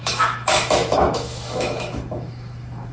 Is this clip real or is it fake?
fake